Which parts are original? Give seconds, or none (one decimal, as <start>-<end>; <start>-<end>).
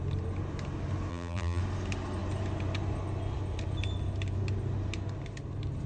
0.0-1.1; 1.6-5.9